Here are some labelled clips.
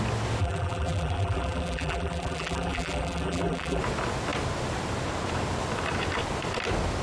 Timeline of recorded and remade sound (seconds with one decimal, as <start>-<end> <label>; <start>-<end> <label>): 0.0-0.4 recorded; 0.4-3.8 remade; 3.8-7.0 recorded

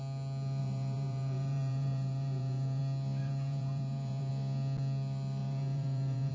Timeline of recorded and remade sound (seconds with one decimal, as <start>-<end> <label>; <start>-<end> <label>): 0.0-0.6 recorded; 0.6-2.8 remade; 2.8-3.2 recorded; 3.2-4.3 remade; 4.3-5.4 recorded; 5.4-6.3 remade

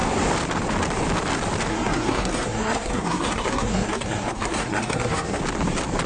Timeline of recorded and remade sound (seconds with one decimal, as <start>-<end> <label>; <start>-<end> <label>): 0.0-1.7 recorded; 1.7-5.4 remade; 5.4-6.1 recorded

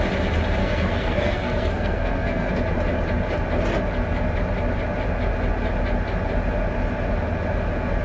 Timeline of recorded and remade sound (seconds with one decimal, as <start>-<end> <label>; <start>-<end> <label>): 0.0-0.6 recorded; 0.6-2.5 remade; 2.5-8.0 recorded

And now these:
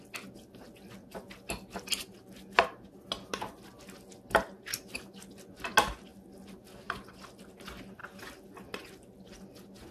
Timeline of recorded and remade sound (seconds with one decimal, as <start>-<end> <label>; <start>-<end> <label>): 0.0-9.9 recorded

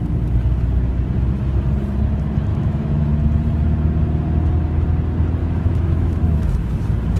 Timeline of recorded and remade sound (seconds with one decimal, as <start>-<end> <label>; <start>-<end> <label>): 0.0-2.5 recorded; 2.5-3.1 remade; 3.1-5.4 recorded; 5.4-6.7 remade; 6.7-7.2 recorded